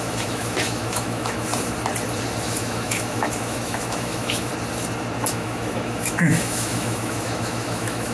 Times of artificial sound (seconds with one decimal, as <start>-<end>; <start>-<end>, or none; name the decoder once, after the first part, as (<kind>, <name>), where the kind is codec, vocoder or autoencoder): 0.0-1.5 (autoencoder, DAC-VAE); 2.4-4.5; 5.3-8.1